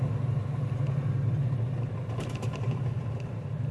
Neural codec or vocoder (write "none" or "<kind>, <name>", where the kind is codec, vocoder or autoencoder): none